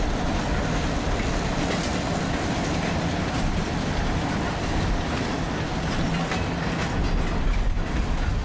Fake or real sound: real